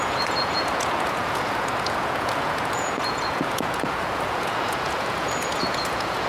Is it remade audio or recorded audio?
remade